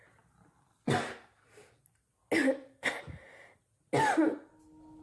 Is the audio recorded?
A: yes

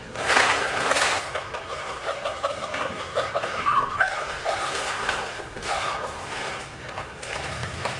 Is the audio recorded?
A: no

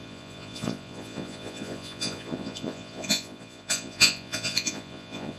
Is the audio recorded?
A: no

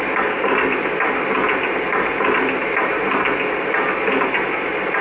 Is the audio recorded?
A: yes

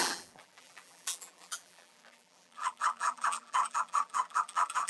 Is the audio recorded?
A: no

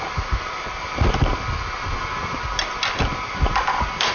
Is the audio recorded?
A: yes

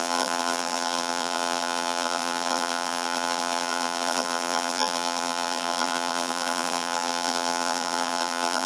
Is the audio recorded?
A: no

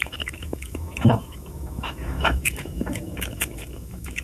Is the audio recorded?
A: no